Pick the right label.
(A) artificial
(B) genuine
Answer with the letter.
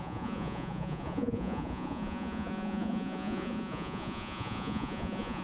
A